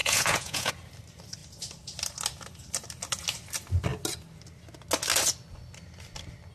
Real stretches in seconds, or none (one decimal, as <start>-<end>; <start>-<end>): 0.7-6.5